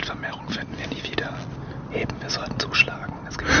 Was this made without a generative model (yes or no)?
yes